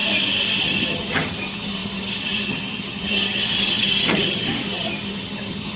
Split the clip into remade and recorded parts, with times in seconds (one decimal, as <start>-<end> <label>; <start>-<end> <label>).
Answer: 0.0-0.6 recorded; 0.6-5.8 remade